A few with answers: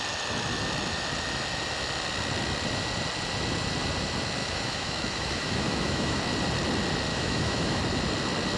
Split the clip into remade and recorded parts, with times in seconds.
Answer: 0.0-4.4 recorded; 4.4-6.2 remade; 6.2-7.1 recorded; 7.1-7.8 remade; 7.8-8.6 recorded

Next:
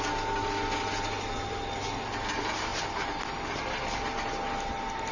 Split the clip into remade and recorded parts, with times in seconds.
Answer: 0.0-5.1 recorded

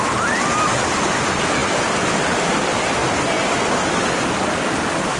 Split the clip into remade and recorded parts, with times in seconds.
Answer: 0.0-5.2 recorded

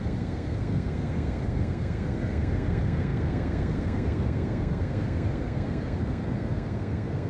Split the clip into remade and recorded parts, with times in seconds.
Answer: 0.0-7.3 remade

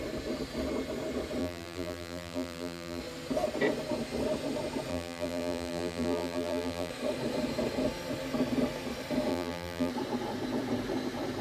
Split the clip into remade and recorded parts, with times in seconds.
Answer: 0.0-1.4 recorded; 1.4-3.0 remade; 3.0-4.9 recorded; 4.9-6.9 remade; 6.9-9.3 recorded; 9.3-9.9 remade; 9.9-11.4 recorded

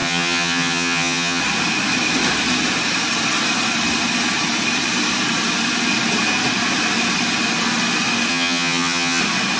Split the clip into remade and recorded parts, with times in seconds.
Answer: 0.0-1.4 remade; 1.4-8.3 recorded; 8.3-9.2 remade; 9.2-9.6 recorded